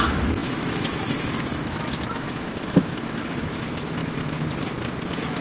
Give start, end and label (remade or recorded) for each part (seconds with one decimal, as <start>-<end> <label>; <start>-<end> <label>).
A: 0.0-4.0 remade; 4.0-5.4 recorded